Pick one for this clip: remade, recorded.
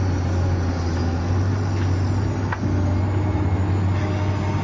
recorded